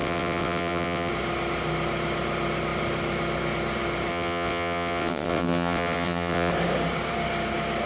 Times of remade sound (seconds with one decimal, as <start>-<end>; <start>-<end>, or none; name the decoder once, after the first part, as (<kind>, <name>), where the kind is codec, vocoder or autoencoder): 0.0-1.1 (vocoder, WaveNeXt); 4.1-6.5